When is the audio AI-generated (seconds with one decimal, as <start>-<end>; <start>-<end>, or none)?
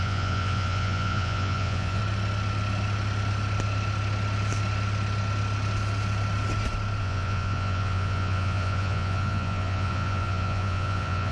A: 0.0-2.0; 7.0-11.3